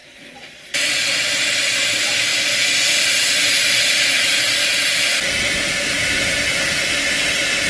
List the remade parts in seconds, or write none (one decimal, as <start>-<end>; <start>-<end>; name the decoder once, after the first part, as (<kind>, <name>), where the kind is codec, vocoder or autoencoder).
0.0-1.3 (vocoder, Vocos)